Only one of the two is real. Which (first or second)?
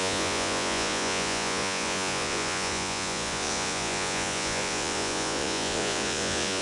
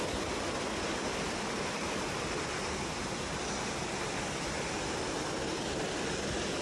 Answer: second